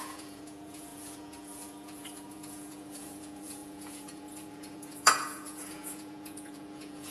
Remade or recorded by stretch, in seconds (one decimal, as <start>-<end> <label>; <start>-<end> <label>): 0.0-7.1 remade